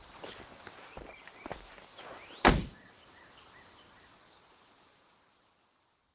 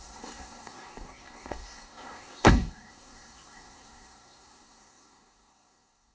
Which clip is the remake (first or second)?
second